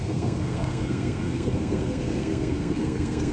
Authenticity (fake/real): fake